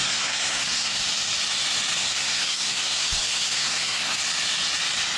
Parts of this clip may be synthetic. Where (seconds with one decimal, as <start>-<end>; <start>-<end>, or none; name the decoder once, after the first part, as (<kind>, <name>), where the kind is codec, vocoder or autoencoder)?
0.0-1.0 (codec, SNAC); 2.0-4.2